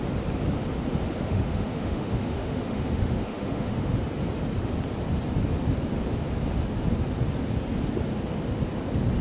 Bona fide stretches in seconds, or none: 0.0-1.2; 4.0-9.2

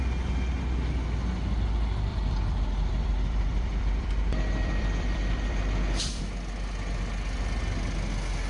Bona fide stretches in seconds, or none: 0.0-2.1; 6.2-8.5

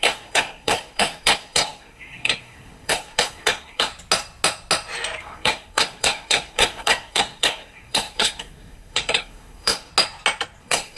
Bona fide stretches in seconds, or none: 3.9-5.2; 9.9-10.6